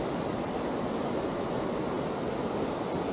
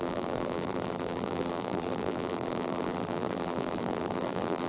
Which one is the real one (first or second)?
first